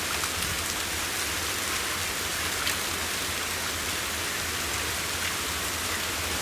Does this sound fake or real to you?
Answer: real